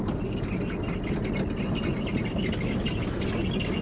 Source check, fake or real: real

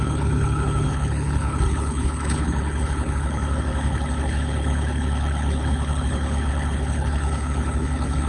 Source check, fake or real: fake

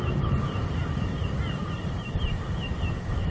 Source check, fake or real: fake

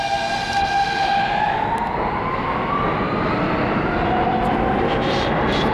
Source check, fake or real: real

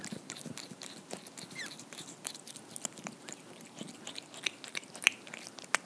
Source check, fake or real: real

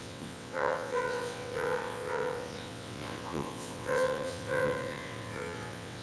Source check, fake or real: fake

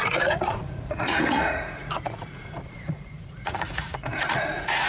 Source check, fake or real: fake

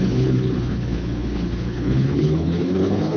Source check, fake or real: fake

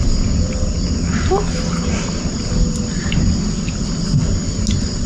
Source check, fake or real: real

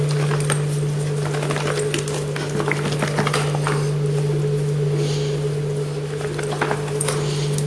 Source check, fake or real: real